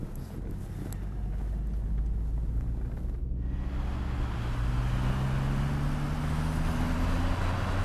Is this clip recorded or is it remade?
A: recorded